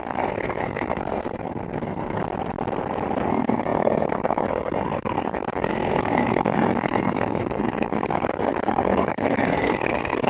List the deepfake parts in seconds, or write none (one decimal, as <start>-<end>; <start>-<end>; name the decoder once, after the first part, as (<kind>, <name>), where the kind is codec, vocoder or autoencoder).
0.0-2.2 (codec, SNAC); 3.3-10.3